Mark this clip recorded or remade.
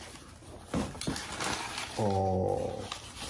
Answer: recorded